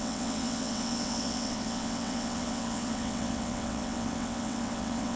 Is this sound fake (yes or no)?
yes